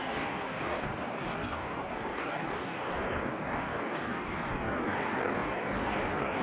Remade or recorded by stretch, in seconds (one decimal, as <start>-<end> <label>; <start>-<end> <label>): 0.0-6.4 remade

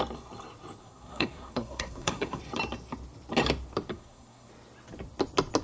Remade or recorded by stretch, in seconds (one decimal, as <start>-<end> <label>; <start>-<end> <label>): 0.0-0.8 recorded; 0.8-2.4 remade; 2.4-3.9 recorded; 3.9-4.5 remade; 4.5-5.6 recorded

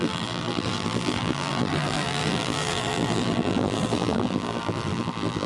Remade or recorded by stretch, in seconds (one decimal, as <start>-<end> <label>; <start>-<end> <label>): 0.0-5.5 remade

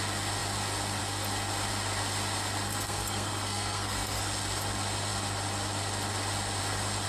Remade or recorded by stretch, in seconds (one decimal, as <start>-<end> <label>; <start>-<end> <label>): 0.0-2.7 recorded; 2.7-4.2 remade; 4.2-7.1 recorded

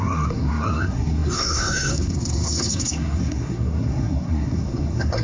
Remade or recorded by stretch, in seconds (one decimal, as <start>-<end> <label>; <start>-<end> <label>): 0.0-5.2 remade

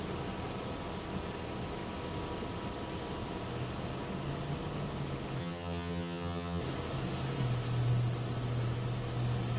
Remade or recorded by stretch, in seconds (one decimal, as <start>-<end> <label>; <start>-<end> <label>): 0.0-5.4 recorded; 5.4-6.6 remade; 6.6-9.6 recorded

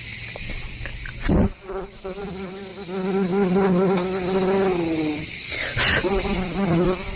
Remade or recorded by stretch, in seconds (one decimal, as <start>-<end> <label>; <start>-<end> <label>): 0.0-2.7 remade; 2.7-5.2 recorded; 5.2-7.2 remade